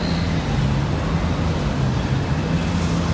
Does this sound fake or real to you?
real